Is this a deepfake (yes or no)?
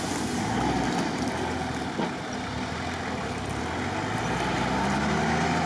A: no